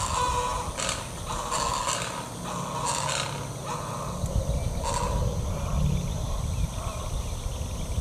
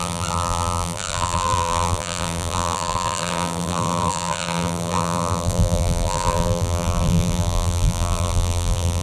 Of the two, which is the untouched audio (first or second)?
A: first